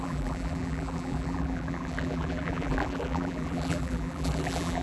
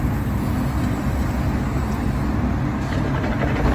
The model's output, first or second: first